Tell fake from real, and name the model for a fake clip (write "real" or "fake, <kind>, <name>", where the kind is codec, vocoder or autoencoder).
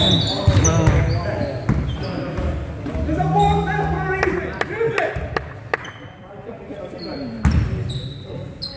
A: real